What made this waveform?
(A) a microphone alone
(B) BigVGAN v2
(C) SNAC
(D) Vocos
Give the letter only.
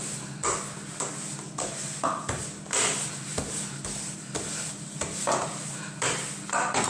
A